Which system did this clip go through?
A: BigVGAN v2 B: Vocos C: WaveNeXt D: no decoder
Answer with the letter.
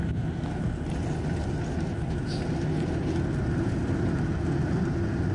D